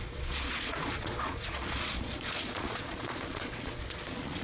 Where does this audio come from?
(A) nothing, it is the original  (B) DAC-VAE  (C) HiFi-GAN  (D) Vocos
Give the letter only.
D